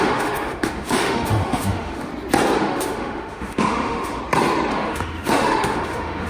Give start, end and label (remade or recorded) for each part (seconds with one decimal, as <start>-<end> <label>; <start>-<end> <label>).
0.0-2.1 remade; 2.1-2.6 recorded; 2.6-4.2 remade; 4.2-4.7 recorded; 4.7-6.3 remade